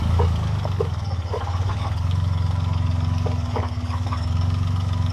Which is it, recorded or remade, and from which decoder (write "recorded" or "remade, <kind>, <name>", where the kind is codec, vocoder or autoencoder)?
remade, codec, DAC